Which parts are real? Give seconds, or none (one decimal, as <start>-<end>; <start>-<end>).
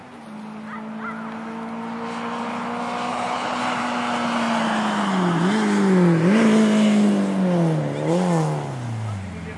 0.0-3.1; 3.6-9.6